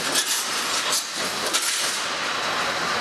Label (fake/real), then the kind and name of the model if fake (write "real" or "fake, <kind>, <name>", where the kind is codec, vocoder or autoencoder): real